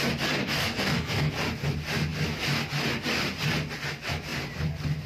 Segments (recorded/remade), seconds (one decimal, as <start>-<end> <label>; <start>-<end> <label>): 0.0-0.4 recorded; 0.4-1.3 remade; 1.3-5.1 recorded